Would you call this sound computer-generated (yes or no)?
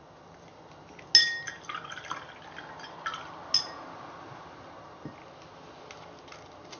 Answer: no